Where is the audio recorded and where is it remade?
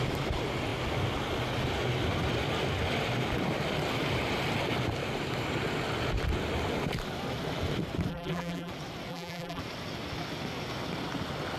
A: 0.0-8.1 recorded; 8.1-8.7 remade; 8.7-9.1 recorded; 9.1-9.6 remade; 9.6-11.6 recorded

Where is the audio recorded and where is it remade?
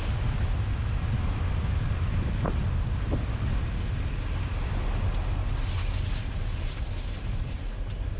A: 0.0-8.2 recorded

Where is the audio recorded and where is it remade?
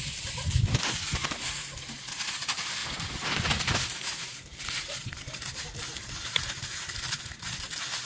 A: 0.0-8.1 recorded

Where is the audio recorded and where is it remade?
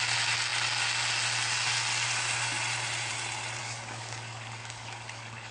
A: 0.0-3.6 recorded; 3.6-5.5 remade